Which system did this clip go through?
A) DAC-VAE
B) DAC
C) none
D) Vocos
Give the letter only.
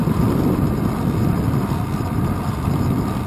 C